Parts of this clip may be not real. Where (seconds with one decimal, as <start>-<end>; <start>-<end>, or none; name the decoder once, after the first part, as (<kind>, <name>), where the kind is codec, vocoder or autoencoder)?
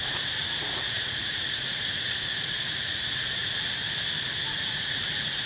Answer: 0.0-3.4 (vocoder, Vocos); 4.5-5.5